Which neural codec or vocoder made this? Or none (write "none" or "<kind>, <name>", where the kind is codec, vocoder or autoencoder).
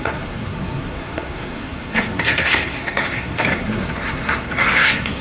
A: codec, SNAC